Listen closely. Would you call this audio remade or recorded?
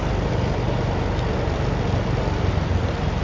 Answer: recorded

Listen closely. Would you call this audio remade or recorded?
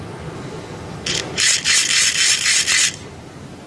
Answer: remade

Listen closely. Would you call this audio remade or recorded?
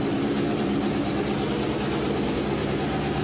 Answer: remade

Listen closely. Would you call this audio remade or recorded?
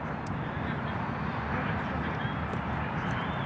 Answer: remade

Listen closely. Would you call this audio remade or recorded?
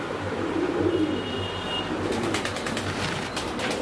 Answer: remade